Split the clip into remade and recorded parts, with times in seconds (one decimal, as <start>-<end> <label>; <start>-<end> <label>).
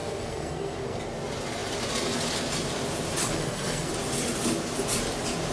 0.0-1.0 remade; 1.0-3.2 recorded; 3.2-3.9 remade; 3.9-5.5 recorded